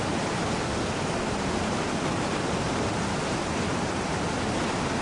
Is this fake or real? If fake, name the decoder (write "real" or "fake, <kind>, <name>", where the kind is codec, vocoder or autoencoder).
real